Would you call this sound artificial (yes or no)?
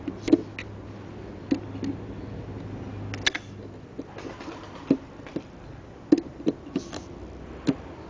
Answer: no